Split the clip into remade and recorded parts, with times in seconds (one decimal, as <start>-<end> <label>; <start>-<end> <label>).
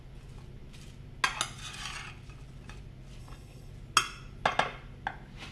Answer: 0.0-3.2 recorded; 3.2-3.7 remade; 3.7-5.5 recorded